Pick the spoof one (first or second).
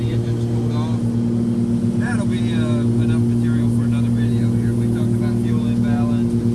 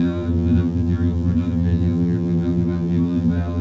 second